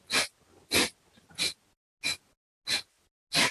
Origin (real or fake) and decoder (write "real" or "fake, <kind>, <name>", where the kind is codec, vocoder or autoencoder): real